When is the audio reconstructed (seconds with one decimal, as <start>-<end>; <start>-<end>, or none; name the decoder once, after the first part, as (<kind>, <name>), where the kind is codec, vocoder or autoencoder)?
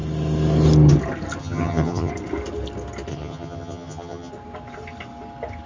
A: 1.4-2.1 (vocoder, HiFi-GAN); 3.1-4.3